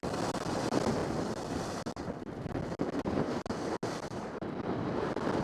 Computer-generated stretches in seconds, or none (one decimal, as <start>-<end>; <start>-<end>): none